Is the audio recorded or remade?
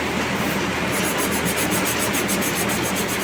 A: recorded